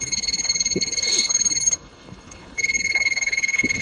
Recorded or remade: remade